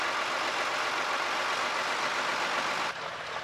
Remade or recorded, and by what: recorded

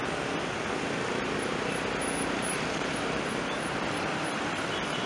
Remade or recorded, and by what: recorded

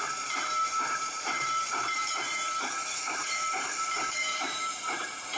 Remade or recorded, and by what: remade, vocoder, BigVGAN v2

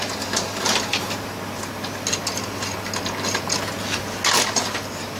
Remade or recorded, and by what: recorded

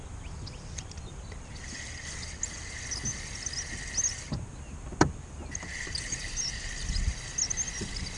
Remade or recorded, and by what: recorded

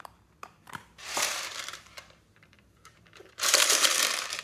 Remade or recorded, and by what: remade, vocoder, BigVGAN v2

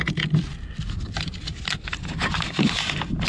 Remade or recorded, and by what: recorded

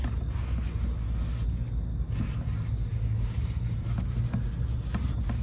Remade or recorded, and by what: recorded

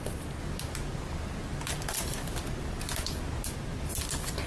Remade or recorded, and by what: recorded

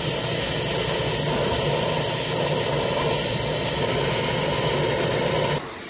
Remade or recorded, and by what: recorded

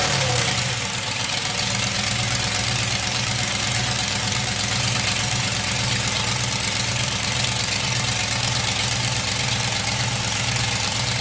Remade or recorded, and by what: remade, vocoder, BigVGAN v2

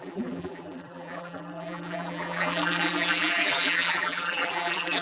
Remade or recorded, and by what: remade, vocoder, BigVGAN v2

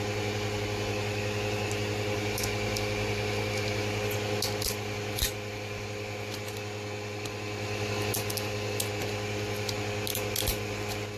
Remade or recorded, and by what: recorded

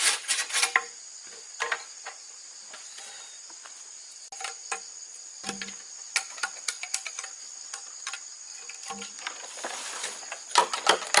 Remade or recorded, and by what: recorded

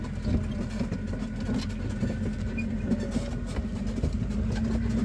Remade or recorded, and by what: recorded